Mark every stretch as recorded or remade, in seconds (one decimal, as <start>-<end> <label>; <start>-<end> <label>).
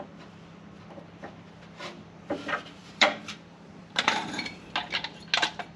0.0-2.8 recorded; 2.8-4.7 remade; 4.7-5.8 recorded